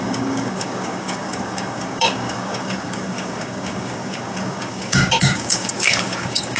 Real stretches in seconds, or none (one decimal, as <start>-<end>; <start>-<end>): none